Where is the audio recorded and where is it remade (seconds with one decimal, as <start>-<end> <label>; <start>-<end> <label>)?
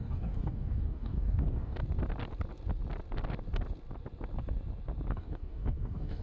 0.0-1.8 remade; 1.8-5.1 recorded; 5.1-6.2 remade